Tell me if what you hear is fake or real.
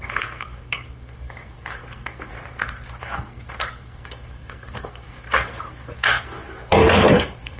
fake